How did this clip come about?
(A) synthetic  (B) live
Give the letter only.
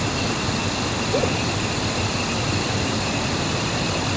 B